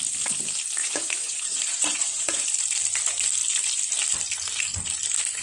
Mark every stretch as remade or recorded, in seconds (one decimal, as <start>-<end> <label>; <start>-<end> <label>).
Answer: 0.0-0.8 recorded; 0.8-2.3 remade; 2.3-5.4 recorded